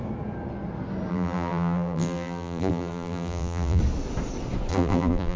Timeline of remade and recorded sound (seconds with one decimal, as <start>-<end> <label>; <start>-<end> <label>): 0.0-1.1 recorded; 1.1-3.8 remade; 3.8-4.7 recorded; 4.7-5.4 remade